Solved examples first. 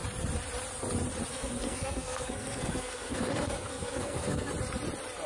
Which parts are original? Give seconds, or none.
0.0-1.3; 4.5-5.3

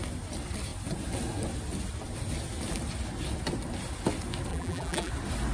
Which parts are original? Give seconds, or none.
0.0-4.5; 5.1-5.5

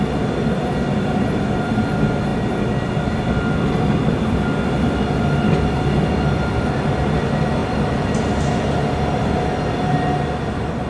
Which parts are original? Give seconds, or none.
0.0-10.9

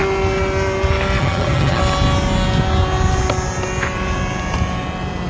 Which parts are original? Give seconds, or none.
0.0-1.2; 1.8-5.3

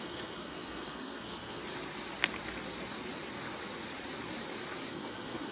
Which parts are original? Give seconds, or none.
1.6-4.9

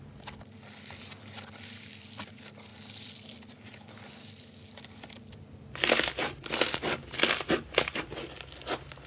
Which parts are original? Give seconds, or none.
0.0-9.1